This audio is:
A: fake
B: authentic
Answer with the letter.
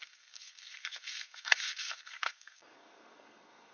A